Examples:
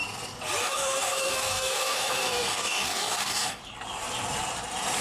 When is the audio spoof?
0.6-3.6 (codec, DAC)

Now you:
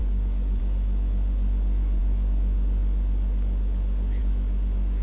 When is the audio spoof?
0.0-0.6 (codec, DAC)

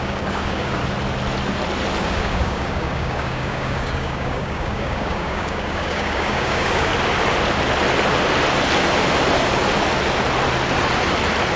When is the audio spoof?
0.0-0.8 (codec, DAC); 2.0-6.9

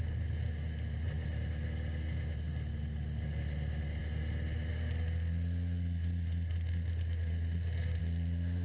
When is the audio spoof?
none

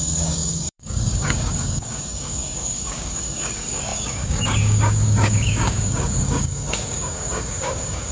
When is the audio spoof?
0.0-8.1 (codec, DAC)

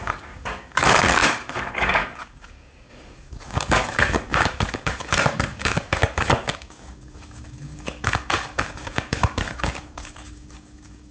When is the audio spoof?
0.0-11.1 (codec, DAC)

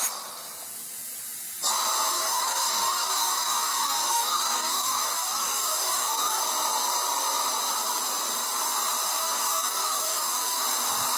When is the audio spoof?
2.1-6.4 (codec, DAC); 9.2-10.6

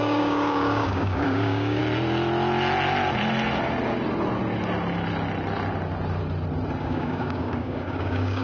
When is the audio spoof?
0.0-1.8 (codec, DAC); 6.8-8.4